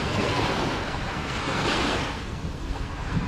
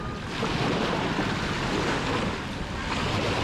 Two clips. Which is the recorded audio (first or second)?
second